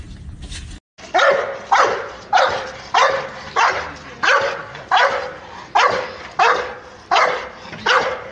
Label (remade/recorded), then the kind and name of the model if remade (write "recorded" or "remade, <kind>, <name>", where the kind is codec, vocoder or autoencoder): recorded